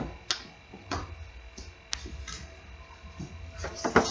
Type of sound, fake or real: real